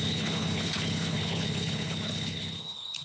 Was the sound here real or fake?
fake